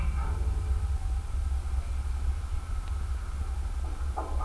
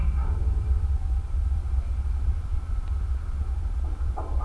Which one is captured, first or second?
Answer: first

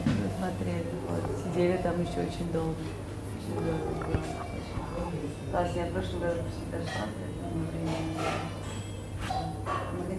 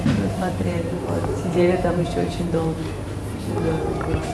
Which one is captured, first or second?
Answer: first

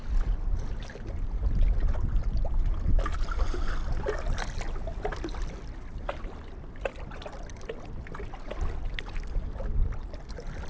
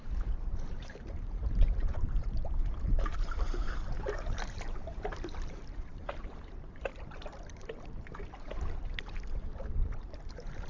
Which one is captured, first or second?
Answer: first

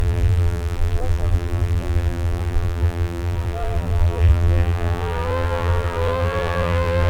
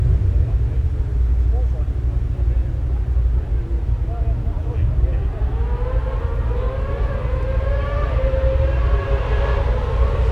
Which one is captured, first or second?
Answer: second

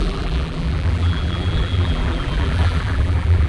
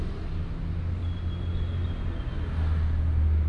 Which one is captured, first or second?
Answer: second